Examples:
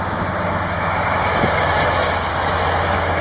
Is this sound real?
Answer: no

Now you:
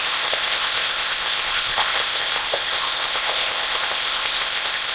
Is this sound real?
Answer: no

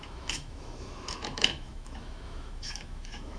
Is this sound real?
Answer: no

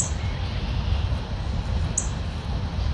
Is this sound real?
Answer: yes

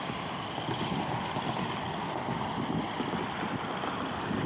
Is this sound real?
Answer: yes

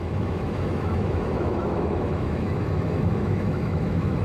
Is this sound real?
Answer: no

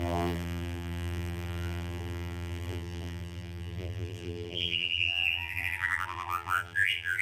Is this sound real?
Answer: no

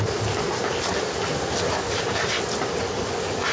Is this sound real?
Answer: yes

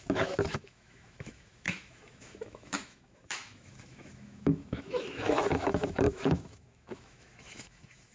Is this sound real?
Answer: no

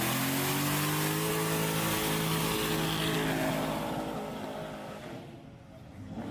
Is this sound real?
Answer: yes